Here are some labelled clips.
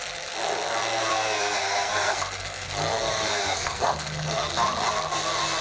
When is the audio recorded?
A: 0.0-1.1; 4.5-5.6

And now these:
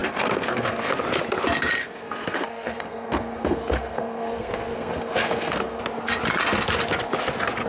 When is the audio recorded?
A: 1.0-1.8; 5.8-7.7

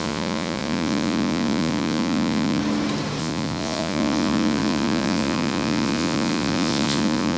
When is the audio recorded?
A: 2.6-3.2